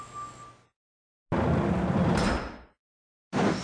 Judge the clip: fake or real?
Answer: real